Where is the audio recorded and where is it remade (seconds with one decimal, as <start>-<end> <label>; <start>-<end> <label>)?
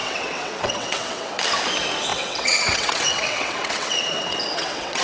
0.0-1.4 remade; 1.4-2.1 recorded; 2.1-5.0 remade